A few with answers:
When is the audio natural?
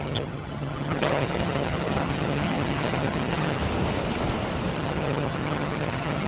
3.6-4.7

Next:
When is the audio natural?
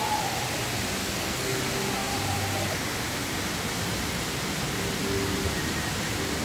0.0-1.0; 1.6-6.4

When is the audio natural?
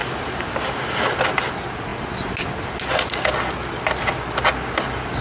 0.0-5.2